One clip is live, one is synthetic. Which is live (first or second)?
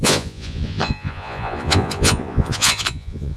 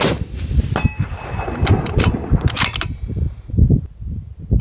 second